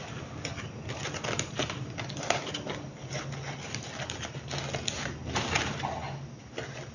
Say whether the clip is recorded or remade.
recorded